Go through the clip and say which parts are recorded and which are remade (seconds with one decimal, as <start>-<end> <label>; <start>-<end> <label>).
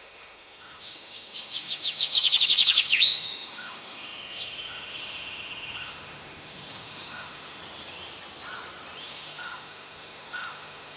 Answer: 0.0-7.6 remade; 7.6-9.0 recorded; 9.0-11.0 remade